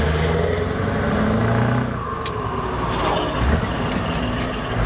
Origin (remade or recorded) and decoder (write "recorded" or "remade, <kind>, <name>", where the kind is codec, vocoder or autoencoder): recorded